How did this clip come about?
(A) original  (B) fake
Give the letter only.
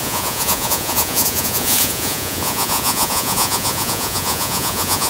B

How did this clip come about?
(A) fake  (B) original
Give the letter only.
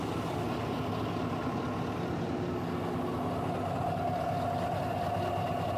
B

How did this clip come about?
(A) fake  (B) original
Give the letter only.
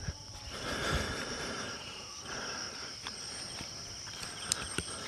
A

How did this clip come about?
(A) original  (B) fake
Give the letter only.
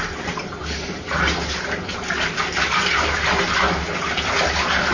A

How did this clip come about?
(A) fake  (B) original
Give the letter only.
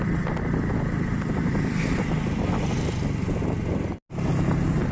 B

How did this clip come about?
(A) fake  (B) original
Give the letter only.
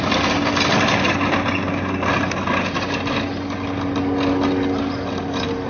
B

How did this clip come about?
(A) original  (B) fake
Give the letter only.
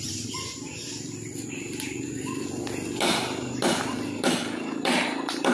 A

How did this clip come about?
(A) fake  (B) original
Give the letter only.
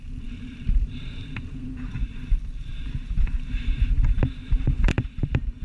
A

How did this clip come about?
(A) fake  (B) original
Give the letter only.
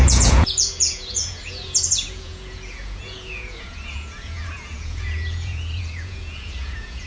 A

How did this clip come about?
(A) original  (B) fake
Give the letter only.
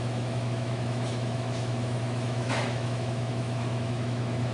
B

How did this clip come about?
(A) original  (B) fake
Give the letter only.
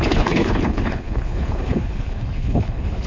B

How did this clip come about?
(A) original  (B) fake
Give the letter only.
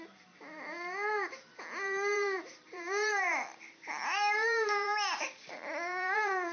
B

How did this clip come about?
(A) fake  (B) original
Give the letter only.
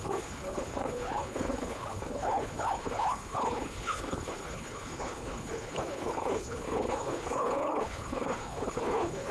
A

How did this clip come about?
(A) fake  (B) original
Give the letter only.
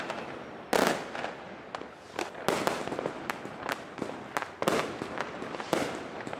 B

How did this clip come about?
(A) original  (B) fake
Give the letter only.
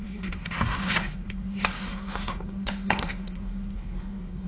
B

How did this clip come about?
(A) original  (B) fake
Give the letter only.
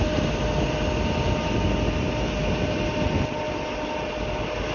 A